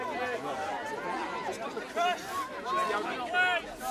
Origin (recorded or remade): recorded